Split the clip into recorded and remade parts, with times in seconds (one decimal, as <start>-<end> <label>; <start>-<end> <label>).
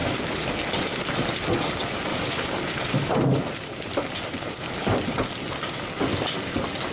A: 0.0-0.5 remade; 0.5-2.1 recorded; 2.1-4.8 remade; 4.8-6.9 recorded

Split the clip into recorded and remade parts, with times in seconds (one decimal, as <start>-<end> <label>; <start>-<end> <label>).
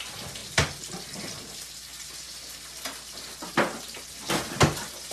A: 0.0-5.1 recorded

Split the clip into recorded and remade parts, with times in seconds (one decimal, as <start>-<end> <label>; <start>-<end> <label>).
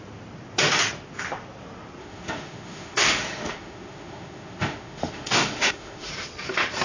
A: 0.0-2.0 recorded; 2.0-6.1 remade; 6.1-6.8 recorded